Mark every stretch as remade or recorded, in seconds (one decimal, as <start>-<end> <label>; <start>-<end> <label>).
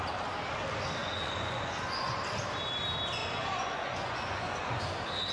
0.0-1.0 recorded; 1.0-2.2 remade; 2.2-3.2 recorded; 3.2-4.8 remade; 4.8-5.3 recorded